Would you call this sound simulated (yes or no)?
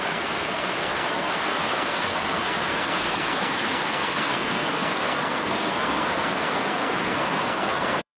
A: yes